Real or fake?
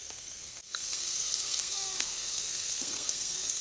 fake